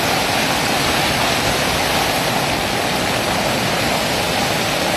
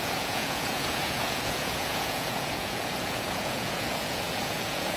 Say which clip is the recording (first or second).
first